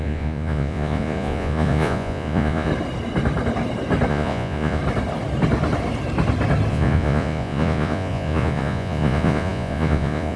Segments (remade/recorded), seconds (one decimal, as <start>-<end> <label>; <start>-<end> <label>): 0.0-2.7 remade; 2.7-4.1 recorded; 4.1-4.8 remade; 4.8-6.7 recorded; 6.7-10.4 remade